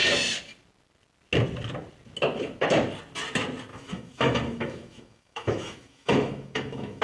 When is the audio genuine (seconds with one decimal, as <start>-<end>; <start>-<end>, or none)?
0.0-3.7